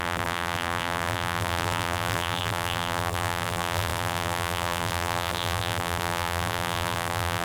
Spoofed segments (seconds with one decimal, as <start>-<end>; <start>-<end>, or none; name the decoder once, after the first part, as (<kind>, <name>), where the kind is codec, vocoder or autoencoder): 0.0-7.4 (vocoder, BigVGAN v2)